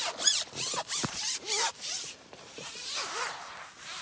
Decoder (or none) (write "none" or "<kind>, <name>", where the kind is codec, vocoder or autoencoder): none